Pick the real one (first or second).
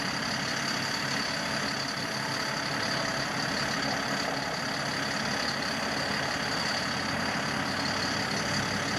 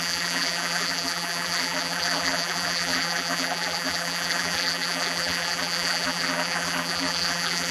first